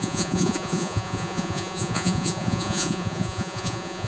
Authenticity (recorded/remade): remade